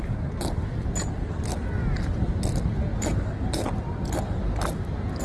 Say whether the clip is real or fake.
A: real